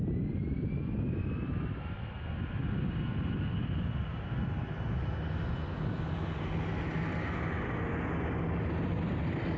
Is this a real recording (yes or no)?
yes